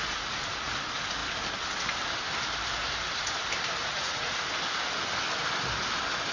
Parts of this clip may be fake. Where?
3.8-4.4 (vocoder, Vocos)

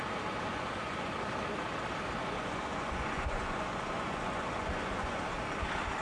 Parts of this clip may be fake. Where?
0.5-1.1 (vocoder, Vocos); 2.2-5.2

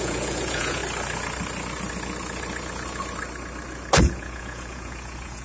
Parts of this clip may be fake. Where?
0.0-0.8 (vocoder, Vocos); 4.0-5.4

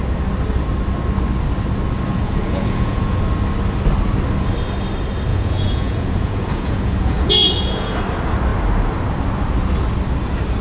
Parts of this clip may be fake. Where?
2.1-3.2 (vocoder, Vocos); 5.3-8.0